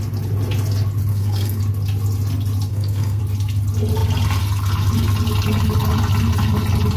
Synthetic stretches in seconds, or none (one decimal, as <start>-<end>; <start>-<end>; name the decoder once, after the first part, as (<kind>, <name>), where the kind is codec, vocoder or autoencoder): 1.1-1.6 (codec, SNAC); 2.7-3.2